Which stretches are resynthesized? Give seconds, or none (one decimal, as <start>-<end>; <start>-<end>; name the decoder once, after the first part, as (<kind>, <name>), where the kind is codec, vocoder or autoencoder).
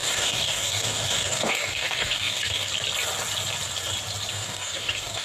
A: 0.0-2.7 (codec, DAC); 4.3-5.2